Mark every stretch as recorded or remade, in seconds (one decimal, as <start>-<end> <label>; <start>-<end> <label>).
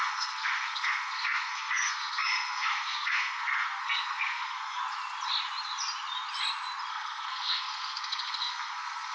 0.0-4.8 remade; 4.8-6.9 recorded; 6.9-9.1 remade